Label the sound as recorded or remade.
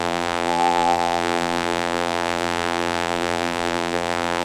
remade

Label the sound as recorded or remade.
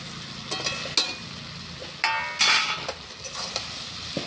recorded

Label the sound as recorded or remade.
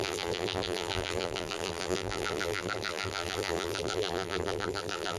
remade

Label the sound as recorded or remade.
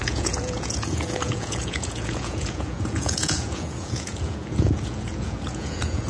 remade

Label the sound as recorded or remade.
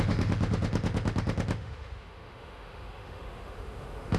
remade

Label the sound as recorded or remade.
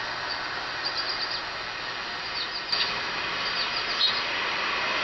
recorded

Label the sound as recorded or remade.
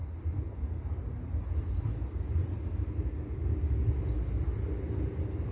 recorded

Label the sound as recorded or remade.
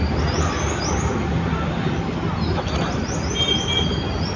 recorded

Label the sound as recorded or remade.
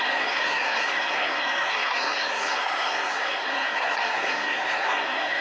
remade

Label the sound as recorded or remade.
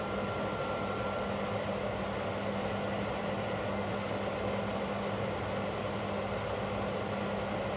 recorded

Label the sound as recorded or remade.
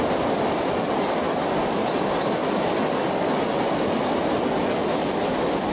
recorded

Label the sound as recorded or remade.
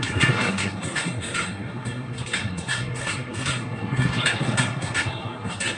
remade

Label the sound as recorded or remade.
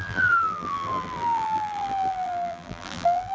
remade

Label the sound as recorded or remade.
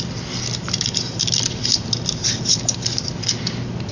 recorded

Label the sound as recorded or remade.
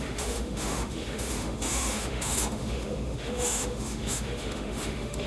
remade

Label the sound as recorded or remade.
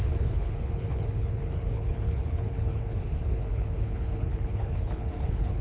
remade